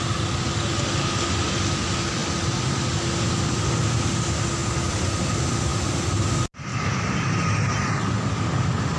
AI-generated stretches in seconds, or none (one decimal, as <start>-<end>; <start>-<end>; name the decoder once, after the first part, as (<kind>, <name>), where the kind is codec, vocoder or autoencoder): 5.7-6.3 (vocoder, BigVGAN v2)